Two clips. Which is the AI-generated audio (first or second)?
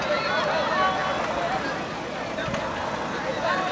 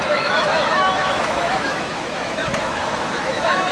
second